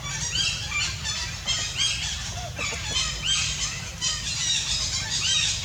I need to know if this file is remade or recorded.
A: recorded